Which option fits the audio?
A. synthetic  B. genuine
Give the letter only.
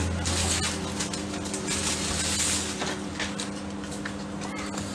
B